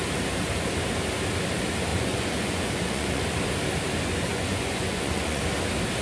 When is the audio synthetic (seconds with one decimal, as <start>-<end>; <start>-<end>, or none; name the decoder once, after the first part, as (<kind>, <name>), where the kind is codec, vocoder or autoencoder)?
1.9-3.2 (vocoder, Vocos); 4.3-5.4